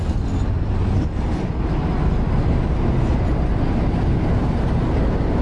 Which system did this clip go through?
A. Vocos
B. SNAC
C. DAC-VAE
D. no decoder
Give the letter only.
D